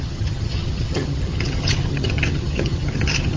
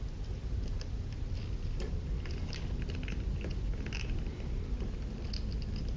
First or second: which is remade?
first